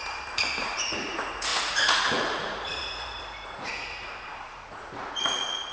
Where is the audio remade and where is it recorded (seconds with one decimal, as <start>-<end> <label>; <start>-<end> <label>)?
0.0-0.6 recorded; 0.6-5.7 remade